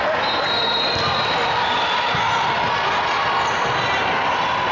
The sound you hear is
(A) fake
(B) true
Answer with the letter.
B